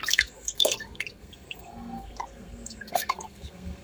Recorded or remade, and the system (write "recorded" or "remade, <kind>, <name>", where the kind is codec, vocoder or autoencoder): remade, codec, SNAC